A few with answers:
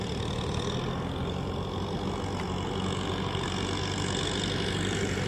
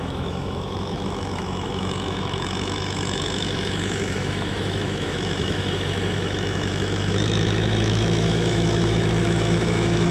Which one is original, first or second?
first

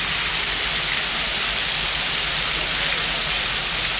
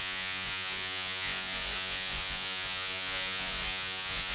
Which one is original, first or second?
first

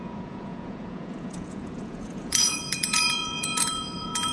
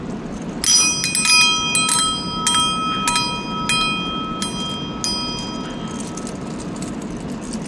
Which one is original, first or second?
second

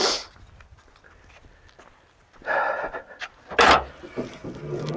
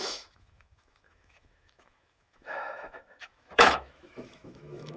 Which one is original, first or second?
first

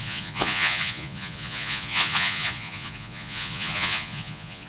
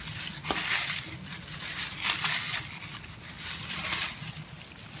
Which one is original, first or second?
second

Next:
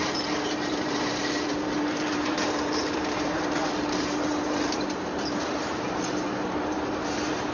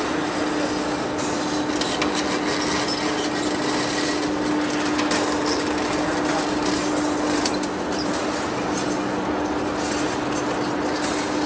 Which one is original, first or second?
second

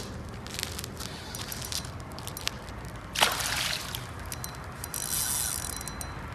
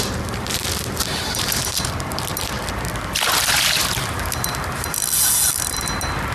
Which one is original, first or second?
first